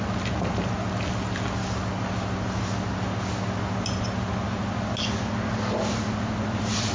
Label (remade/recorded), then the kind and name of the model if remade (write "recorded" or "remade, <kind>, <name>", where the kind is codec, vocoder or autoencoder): recorded